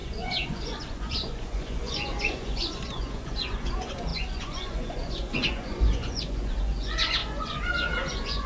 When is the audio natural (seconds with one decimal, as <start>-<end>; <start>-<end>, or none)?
none